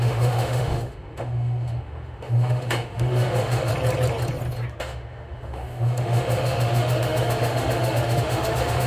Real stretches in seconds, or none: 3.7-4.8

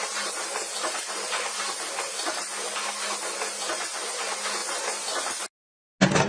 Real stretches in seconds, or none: 0.0-6.3

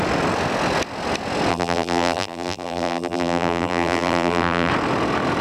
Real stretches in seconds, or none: 0.0-1.5; 4.7-5.4

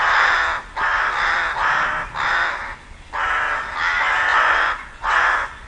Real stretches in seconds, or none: 0.0-4.3